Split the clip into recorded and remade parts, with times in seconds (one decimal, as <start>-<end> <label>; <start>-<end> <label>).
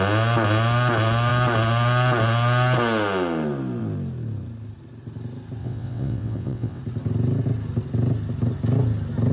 0.0-5.6 recorded; 5.6-6.8 remade; 6.8-9.3 recorded